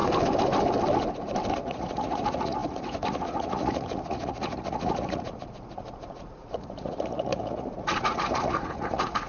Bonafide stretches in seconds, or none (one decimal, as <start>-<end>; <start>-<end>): 0.0-1.5

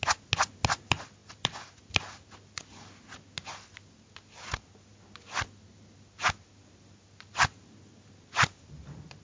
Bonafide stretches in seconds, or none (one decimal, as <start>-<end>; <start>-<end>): 0.0-1.2; 1.8-9.2

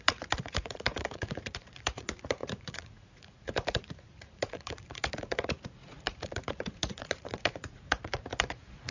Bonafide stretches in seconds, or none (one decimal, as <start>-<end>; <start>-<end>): none

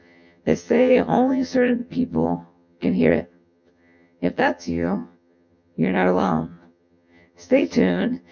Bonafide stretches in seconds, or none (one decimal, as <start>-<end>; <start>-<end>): none

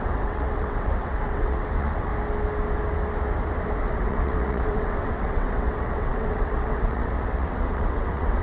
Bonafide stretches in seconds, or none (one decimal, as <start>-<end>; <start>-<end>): 2.1-3.8